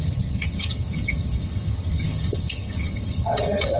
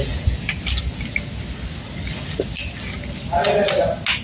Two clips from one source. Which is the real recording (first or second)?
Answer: second